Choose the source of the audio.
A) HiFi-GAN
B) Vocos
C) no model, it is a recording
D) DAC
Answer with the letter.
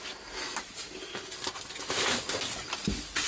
C